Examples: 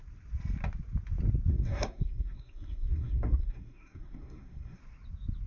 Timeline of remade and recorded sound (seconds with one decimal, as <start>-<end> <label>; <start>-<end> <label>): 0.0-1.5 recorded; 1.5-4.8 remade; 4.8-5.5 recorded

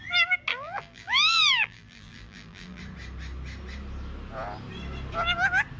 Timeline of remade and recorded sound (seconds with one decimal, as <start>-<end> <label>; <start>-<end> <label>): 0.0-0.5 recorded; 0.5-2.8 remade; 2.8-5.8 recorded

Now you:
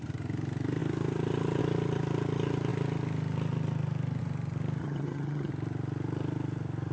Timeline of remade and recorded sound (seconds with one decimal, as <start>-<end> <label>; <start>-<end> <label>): 0.0-4.8 recorded; 4.8-5.5 remade; 5.5-6.9 recorded

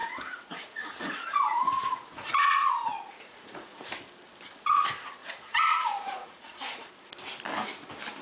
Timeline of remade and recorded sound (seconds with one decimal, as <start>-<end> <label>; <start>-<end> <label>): 0.0-3.9 remade; 3.9-5.2 recorded; 5.2-6.9 remade; 6.9-8.2 recorded

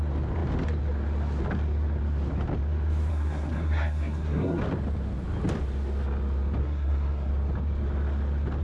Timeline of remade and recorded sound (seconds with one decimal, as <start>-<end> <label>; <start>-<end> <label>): 0.0-3.1 recorded; 3.1-4.6 remade; 4.6-6.6 recorded; 6.6-7.3 remade; 7.3-8.6 recorded